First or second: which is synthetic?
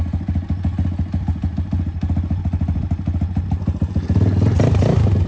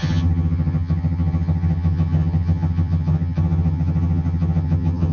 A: second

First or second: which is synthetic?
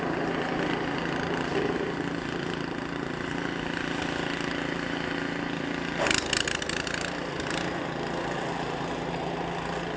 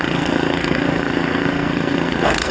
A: second